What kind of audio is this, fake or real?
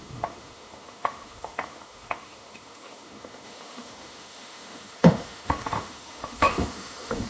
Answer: fake